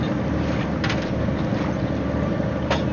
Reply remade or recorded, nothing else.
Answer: recorded